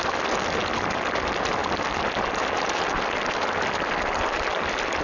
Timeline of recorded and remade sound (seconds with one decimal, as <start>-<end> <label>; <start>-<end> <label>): 0.0-5.0 recorded